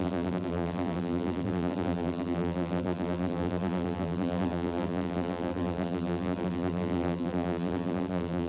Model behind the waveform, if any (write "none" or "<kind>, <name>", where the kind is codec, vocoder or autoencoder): vocoder, BigVGAN v2